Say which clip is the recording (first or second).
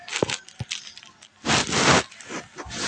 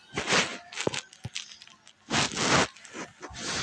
second